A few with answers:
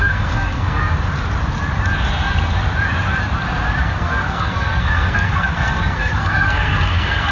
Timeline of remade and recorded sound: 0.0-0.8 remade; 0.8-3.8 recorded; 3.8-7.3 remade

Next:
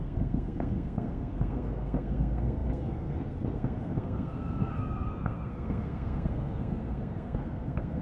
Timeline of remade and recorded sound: 0.0-8.0 remade

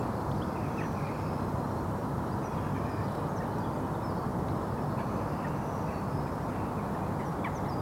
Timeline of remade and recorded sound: 0.0-7.8 recorded

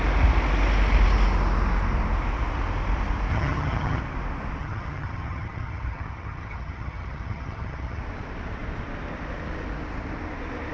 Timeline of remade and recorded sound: 0.0-3.3 recorded; 3.3-4.0 remade; 4.0-4.6 recorded; 4.6-8.0 remade; 8.0-10.7 recorded